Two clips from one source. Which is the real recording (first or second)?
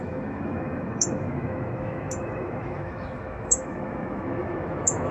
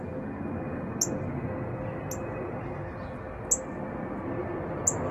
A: second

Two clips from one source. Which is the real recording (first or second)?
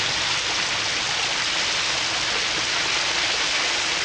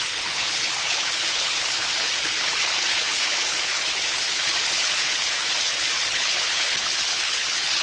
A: first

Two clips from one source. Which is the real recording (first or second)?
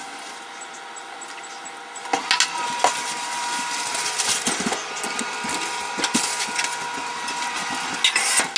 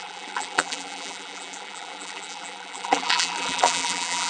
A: first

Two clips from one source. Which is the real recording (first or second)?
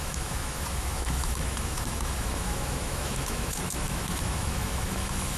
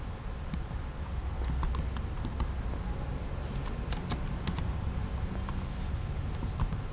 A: second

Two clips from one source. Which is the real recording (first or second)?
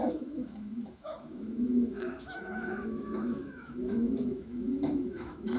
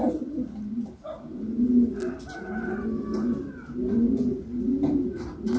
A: second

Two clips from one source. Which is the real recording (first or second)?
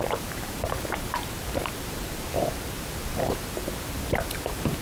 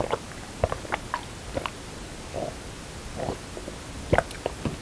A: second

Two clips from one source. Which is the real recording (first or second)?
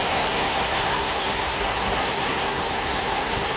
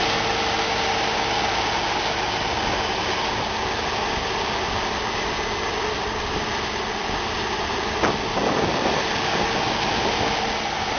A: second